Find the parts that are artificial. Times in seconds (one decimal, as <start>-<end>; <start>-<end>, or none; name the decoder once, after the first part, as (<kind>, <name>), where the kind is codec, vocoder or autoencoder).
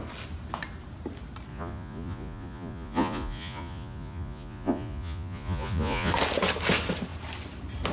1.5-6.1 (vocoder, Vocos)